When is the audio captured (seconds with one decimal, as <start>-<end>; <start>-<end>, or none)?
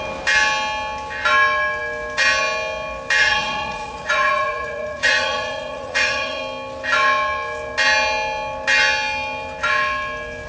0.0-3.2; 6.4-10.5